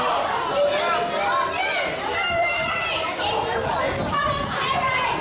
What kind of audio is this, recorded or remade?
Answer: recorded